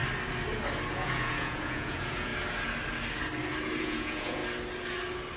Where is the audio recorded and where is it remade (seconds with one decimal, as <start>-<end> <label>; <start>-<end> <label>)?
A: 0.0-0.9 recorded; 0.9-2.3 remade; 2.3-3.8 recorded; 3.8-4.4 remade; 4.4-5.4 recorded